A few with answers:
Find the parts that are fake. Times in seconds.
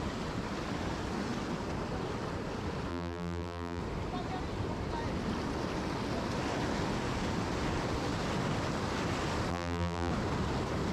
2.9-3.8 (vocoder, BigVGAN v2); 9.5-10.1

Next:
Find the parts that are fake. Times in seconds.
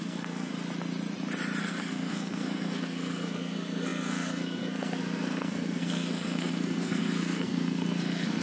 0.0-0.5 (codec, SNAC); 1.6-8.4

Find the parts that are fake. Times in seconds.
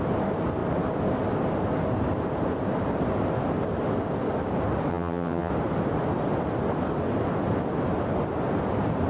4.9-5.5 (vocoder, HiFi-GAN)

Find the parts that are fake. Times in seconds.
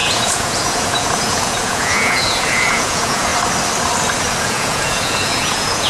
0.0-3.3 (vocoder, Vocos); 4.4-5.9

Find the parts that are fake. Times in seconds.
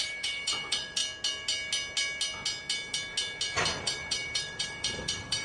0.0-1.0 (vocoder, BigVGAN v2); 3.8-5.4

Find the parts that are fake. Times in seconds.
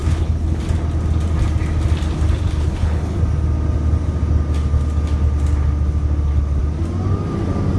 0.0-0.6 (codec, HILCodec); 2.6-3.2